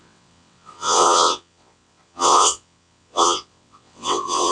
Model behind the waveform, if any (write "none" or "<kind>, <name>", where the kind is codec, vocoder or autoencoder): vocoder, WaveNeXt